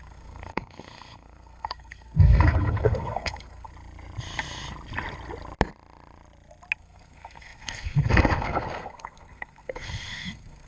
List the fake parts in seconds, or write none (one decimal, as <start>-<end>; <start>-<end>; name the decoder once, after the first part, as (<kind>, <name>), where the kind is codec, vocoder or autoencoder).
0.0-3.7 (codec, SNAC); 6.8-10.7